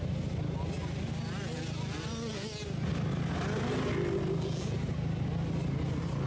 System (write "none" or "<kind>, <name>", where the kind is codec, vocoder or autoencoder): none